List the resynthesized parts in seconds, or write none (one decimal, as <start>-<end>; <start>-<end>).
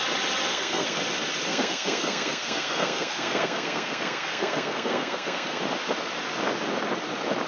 0.5-1.0; 1.5-5.6